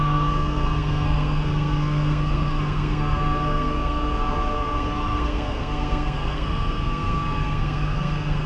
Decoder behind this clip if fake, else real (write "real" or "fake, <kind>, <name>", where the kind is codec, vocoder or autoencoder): fake, codec, SNAC